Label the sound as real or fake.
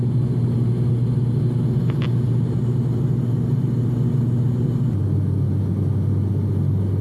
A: real